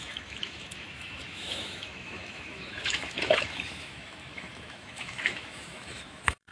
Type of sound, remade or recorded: remade